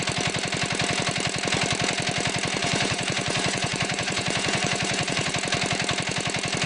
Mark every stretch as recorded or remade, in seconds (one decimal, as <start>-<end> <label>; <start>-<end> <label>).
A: 0.0-2.6 recorded; 2.6-5.3 remade; 5.3-6.7 recorded